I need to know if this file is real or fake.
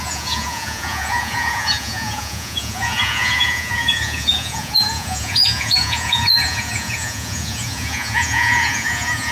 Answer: fake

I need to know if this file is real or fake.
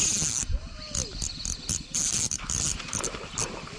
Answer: real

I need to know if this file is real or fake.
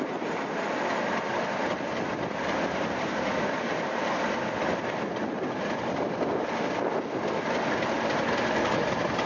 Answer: real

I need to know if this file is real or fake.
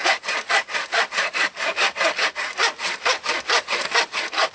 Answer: real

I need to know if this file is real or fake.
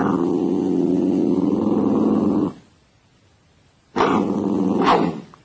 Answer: real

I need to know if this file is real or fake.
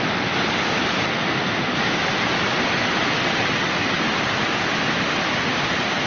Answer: real